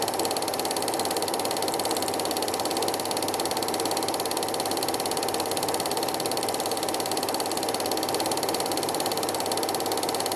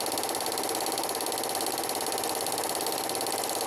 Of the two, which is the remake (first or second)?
first